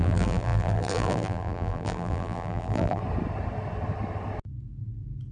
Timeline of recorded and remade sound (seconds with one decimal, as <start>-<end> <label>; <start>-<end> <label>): 0.0-3.0 remade; 3.0-5.3 recorded